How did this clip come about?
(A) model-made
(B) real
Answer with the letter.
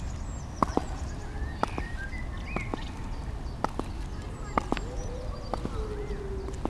B